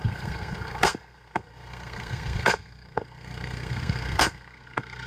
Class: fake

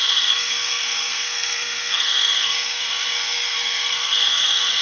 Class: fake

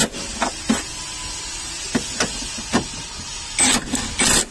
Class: real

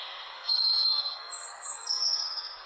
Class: fake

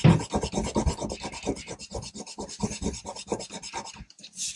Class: real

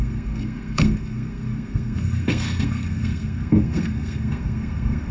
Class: fake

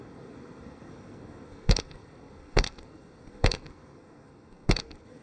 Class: fake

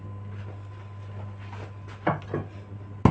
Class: real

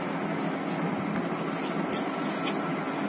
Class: real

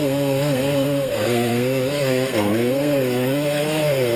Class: fake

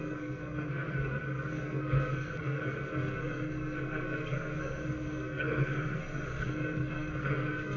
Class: fake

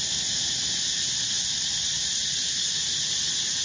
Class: real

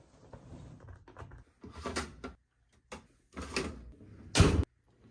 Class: real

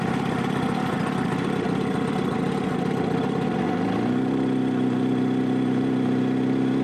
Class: real